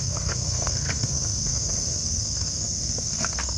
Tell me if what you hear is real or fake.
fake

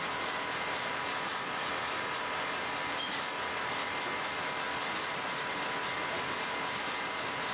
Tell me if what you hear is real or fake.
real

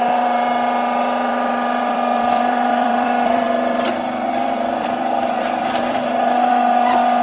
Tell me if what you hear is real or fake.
fake